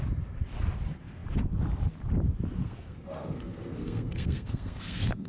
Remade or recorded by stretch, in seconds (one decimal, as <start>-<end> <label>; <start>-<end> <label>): 0.0-2.6 recorded; 2.6-5.3 remade